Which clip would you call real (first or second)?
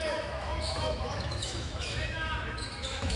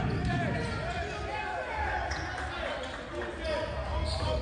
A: second